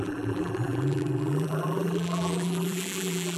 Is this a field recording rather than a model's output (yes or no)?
no